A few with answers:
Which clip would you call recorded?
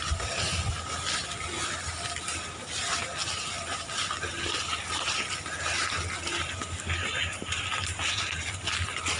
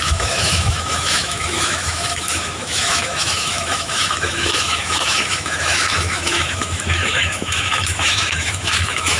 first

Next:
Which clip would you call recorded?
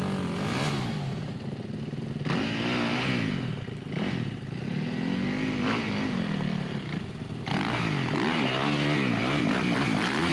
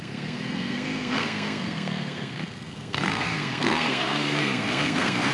first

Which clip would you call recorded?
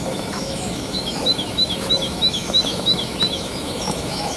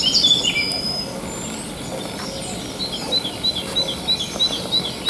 second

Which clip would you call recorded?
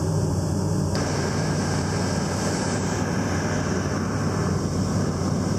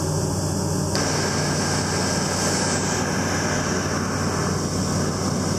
second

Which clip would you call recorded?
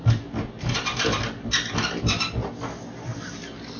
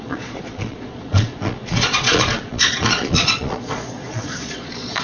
first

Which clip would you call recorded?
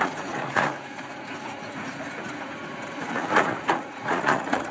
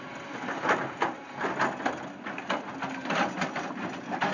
second